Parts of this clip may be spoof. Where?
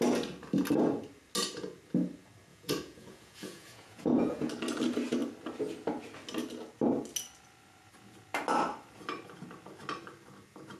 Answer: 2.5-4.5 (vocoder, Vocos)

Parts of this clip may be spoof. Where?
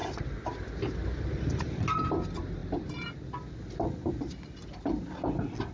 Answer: none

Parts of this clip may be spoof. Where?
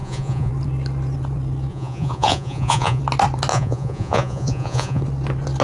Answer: 0.0-0.5 (vocoder, Vocos); 1.7-3.0; 3.5-5.0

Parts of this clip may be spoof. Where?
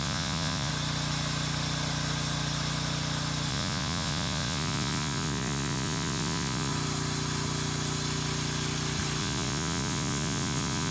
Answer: 0.0-0.7 (vocoder, Vocos); 3.5-6.7; 9.2-10.9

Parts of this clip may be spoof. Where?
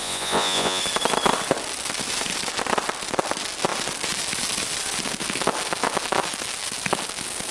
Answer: 0.0-0.8 (vocoder, Vocos)